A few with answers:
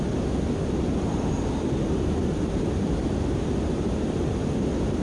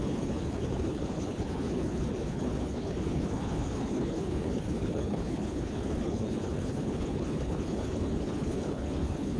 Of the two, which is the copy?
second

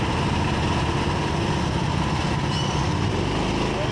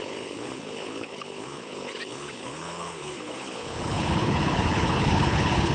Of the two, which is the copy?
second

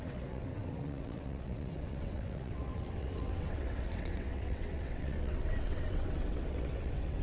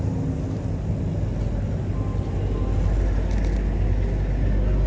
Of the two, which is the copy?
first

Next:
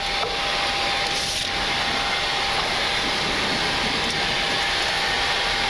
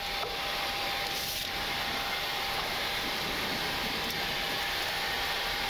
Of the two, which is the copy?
second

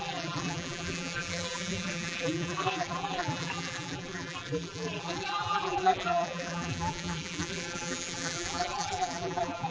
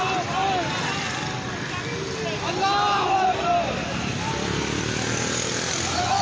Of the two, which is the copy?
first